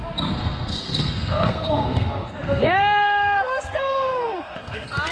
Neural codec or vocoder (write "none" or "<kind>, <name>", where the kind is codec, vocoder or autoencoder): codec, SNAC